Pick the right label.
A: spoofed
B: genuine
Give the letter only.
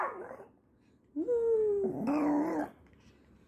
B